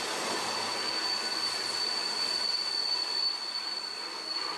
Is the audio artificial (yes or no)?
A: no